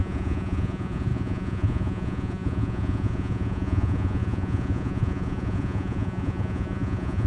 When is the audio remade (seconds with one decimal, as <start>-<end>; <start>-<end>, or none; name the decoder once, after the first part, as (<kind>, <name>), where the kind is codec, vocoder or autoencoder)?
0.0-7.3 (vocoder, Vocos)